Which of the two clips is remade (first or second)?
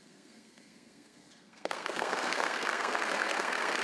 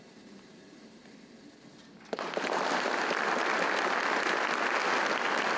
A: first